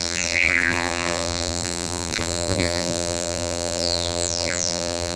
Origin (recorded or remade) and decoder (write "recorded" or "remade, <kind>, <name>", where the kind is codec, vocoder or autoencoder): remade, vocoder, BigVGAN v2